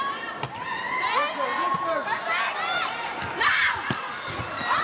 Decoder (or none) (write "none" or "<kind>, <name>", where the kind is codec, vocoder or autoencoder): none